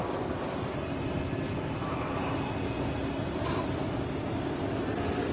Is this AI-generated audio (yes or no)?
no